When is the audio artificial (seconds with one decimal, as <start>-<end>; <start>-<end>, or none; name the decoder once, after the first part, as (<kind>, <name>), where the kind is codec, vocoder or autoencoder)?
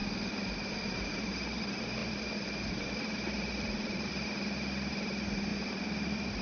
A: 0.0-1.3 (vocoder, BigVGAN v2); 2.0-4.1; 5.5-6.4